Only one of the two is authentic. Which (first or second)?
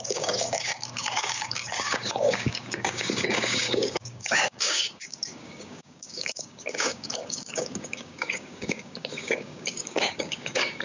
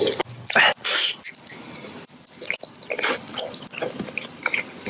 second